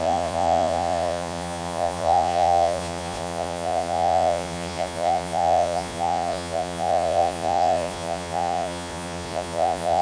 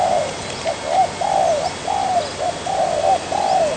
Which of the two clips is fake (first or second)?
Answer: first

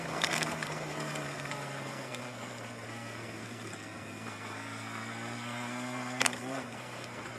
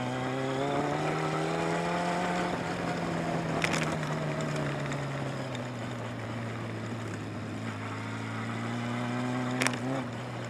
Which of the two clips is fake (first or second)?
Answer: first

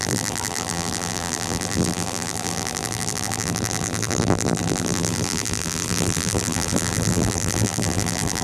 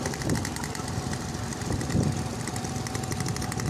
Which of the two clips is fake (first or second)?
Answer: first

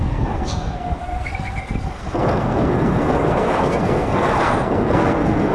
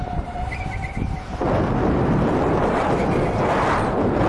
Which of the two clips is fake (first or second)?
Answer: first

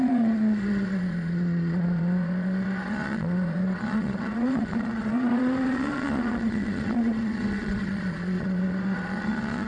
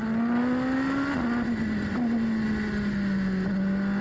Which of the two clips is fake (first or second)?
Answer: first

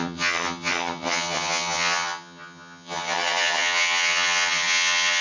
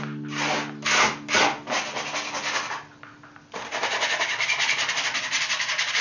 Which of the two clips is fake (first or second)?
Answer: first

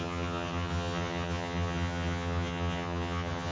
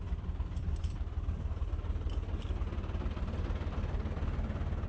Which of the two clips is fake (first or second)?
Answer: first